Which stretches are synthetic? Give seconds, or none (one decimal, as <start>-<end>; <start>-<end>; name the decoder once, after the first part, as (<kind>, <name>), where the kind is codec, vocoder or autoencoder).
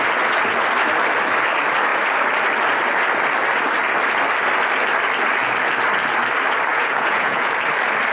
6.7-7.5 (vocoder, Vocos)